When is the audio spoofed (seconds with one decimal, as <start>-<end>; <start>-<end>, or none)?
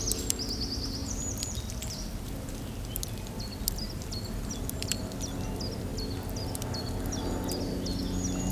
1.0-5.0